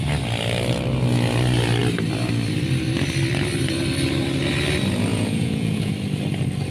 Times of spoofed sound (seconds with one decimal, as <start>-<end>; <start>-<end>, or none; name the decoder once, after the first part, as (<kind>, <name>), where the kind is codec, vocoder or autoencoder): 5.1-5.9 (vocoder, Vocos)